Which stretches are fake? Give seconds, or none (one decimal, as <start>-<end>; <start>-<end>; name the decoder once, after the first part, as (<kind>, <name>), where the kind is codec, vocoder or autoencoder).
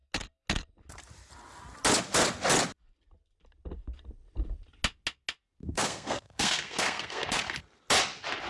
5.6-7.4 (codec, SNAC)